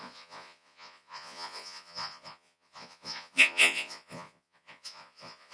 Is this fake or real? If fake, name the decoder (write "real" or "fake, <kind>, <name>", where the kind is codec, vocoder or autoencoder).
fake, vocoder, Vocos